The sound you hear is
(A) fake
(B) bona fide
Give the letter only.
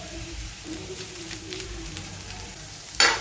A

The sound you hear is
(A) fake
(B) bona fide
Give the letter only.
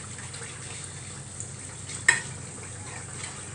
B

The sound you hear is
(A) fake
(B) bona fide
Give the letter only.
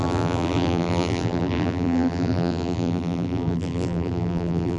A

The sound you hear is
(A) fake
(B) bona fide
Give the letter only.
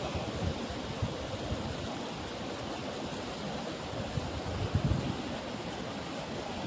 B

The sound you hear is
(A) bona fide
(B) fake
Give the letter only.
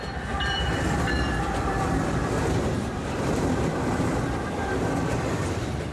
B